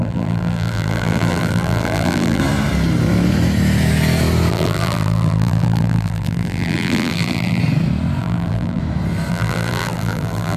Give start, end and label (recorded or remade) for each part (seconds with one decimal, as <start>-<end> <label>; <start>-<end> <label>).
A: 0.0-2.4 remade; 2.4-4.5 recorded; 4.5-7.6 remade; 7.6-8.2 recorded; 8.2-8.8 remade; 8.8-9.3 recorded; 9.3-10.6 remade